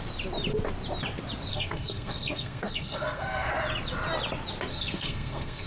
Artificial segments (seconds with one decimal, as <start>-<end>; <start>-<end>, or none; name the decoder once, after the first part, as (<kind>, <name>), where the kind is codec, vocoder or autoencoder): 1.5-3.5 (codec, SNAC); 4.7-5.7